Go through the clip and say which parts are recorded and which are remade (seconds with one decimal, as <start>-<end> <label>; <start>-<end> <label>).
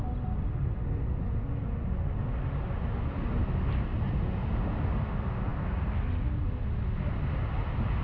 0.0-8.0 recorded